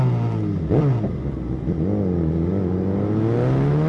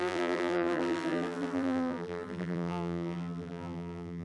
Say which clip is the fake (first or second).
second